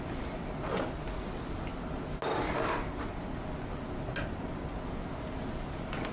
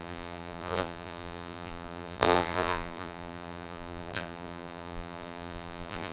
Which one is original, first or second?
first